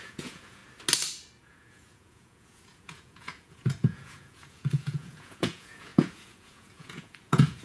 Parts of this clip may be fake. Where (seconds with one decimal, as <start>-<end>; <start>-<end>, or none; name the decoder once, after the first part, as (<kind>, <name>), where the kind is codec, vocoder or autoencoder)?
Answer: 0.0-0.6 (vocoder, Vocos); 1.4-7.6